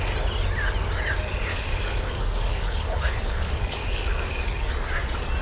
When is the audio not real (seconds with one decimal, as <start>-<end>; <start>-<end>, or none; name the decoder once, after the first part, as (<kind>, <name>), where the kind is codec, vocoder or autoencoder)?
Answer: 1.5-4.7 (codec, DAC)